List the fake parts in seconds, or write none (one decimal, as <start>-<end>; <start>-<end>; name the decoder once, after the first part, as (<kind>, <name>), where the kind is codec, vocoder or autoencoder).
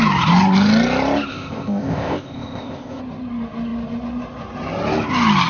1.3-3.0 (codec, ZipCodec)